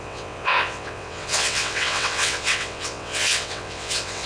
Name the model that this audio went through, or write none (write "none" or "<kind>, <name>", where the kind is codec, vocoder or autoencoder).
vocoder, WaveNeXt